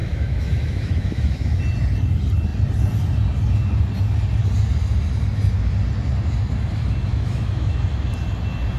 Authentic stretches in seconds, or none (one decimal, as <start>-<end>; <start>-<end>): 1.6-7.1; 7.8-8.8